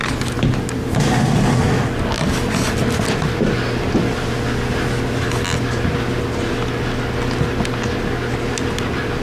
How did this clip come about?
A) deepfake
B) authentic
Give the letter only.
B